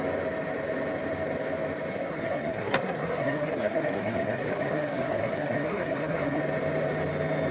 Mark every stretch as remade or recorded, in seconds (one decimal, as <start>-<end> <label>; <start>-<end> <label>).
0.0-1.9 recorded; 1.9-6.4 remade; 6.4-7.5 recorded